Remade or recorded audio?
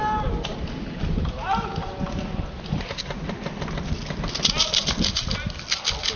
recorded